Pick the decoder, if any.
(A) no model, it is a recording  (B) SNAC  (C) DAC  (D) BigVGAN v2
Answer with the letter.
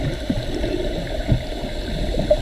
D